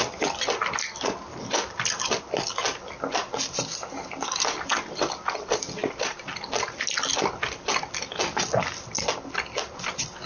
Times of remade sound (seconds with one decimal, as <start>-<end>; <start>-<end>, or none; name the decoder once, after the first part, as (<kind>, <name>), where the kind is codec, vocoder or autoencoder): none